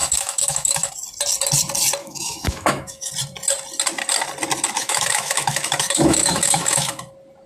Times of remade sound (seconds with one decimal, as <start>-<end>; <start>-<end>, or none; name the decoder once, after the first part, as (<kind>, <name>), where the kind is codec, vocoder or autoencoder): 0.0-0.9 (autoencoder, DAC-VAE); 2.0-3.1; 4.8-7.0